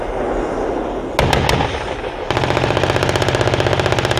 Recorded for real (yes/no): yes